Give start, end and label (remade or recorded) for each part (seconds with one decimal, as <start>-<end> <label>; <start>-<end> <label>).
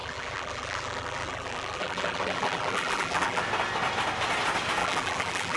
0.0-3.4 remade; 3.4-4.8 recorded; 4.8-5.6 remade